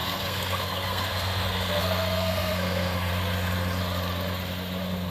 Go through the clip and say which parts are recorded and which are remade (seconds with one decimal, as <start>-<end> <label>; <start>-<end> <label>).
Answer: 0.0-3.1 remade; 3.1-5.1 recorded